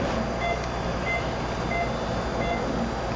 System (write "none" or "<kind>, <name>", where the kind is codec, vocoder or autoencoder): none